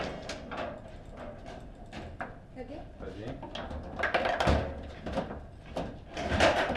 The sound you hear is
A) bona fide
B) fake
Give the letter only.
A